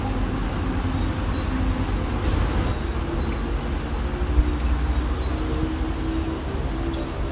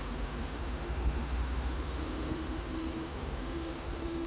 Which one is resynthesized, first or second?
second